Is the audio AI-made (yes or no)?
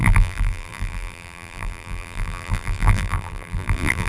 yes